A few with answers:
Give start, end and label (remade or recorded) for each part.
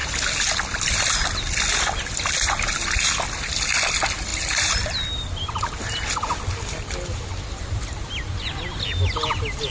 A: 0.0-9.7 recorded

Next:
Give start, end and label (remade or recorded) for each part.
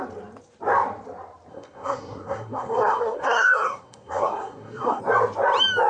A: 0.0-1.5 recorded; 1.5-5.0 remade; 5.0-5.9 recorded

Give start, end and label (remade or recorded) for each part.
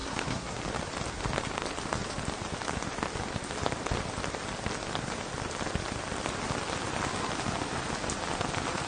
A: 0.0-0.6 remade; 0.6-8.9 recorded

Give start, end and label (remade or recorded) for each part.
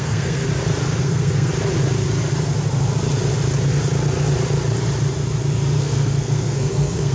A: 0.0-0.5 remade; 0.5-1.0 recorded; 1.0-1.5 remade; 1.5-5.8 recorded; 5.8-7.1 remade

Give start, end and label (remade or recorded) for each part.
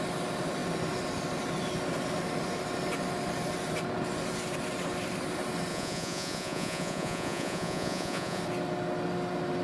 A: 0.0-5.7 recorded; 5.7-8.4 remade; 8.4-9.6 recorded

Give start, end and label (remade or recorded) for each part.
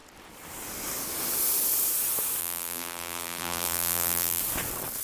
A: 0.0-2.4 recorded; 2.4-4.4 remade; 4.4-5.0 recorded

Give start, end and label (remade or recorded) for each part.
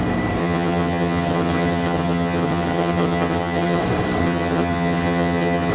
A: 0.0-0.4 recorded; 0.4-3.8 remade; 3.8-4.2 recorded; 4.2-5.7 remade